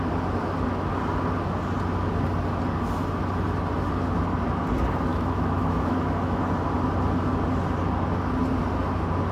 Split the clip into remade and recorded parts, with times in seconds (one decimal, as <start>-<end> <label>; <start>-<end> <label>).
0.0-5.1 recorded; 5.1-6.4 remade; 6.4-9.3 recorded